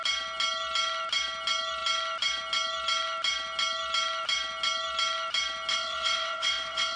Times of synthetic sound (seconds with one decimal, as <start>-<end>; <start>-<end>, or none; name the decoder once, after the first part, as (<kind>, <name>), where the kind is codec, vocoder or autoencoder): 5.7-7.0 (vocoder, WaveNeXt)